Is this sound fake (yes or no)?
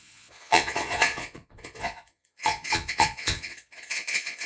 yes